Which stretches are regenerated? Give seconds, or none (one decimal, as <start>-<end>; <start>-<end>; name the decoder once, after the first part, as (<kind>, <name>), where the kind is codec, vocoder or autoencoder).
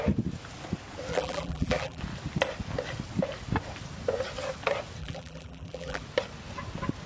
1.1-2.0 (vocoder, BigVGAN v2); 5.0-6.0